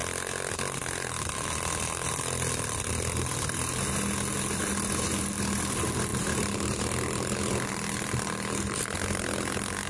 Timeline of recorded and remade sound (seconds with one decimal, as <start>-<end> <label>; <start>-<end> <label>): 0.0-9.9 recorded